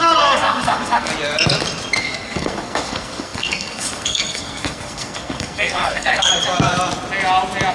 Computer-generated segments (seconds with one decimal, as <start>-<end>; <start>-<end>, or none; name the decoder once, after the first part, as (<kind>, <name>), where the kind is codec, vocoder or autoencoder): 0.0-1.1 (codec, SNAC); 2.0-6.3